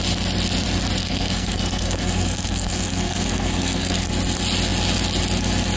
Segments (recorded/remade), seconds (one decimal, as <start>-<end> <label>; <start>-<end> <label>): 0.0-1.0 recorded; 1.0-4.0 remade; 4.0-5.8 recorded